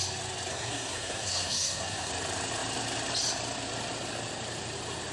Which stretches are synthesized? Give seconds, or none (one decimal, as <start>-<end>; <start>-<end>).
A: 0.5-2.1